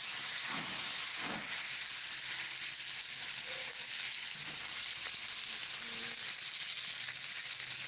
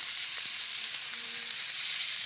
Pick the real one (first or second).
first